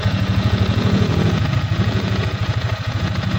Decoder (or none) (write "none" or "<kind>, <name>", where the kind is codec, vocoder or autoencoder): vocoder, Vocos